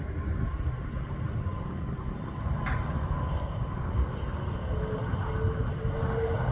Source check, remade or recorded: recorded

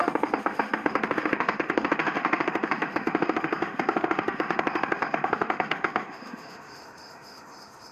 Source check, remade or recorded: remade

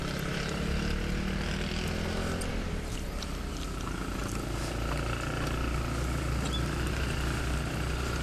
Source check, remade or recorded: recorded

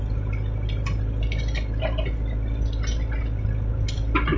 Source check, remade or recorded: recorded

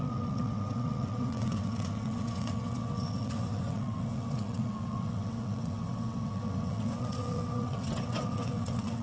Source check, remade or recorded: remade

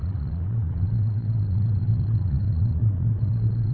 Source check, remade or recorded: remade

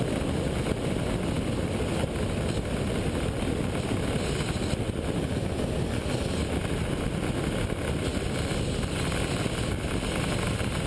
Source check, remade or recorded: recorded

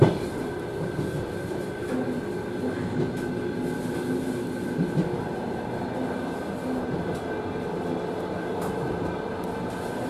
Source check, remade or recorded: recorded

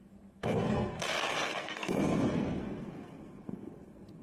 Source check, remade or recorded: remade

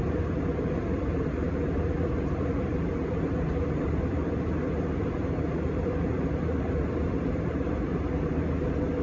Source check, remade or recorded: remade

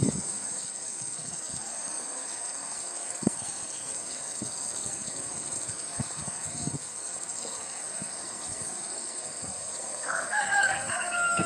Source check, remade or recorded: remade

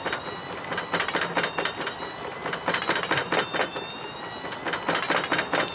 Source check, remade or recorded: recorded